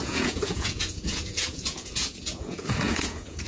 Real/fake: fake